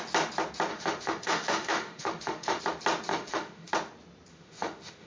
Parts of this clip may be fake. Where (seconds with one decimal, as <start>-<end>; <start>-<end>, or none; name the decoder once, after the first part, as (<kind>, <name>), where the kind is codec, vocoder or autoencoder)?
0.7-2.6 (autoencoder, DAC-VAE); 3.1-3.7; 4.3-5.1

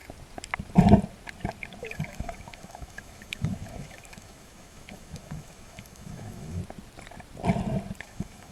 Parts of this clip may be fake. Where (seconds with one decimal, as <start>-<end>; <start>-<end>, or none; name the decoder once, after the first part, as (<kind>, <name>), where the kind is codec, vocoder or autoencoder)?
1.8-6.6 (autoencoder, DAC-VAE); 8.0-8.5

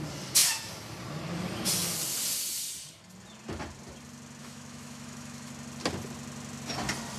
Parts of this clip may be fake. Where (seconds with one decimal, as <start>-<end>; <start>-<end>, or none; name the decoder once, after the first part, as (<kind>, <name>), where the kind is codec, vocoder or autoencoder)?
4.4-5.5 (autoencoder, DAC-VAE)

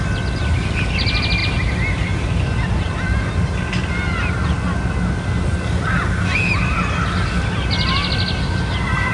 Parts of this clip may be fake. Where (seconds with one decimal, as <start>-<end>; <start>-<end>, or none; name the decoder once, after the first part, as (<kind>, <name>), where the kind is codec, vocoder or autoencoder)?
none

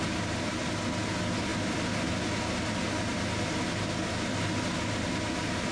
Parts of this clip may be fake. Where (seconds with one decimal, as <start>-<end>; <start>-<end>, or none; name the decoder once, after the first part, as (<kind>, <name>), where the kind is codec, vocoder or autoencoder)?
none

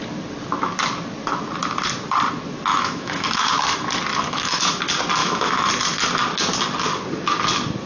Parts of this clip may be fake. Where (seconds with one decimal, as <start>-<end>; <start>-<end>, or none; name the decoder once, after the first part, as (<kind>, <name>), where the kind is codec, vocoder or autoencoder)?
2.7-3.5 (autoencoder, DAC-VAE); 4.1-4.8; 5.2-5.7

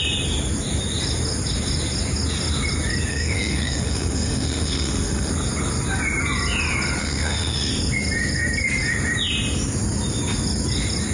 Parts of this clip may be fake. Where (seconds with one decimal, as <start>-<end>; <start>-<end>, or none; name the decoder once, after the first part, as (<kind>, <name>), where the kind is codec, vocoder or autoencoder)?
3.1-5.3 (autoencoder, DAC-VAE); 7.0-7.7